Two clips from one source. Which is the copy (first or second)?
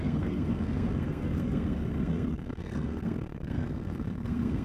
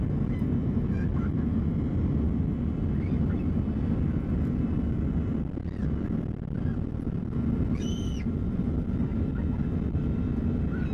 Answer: first